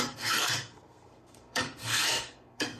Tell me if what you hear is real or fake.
fake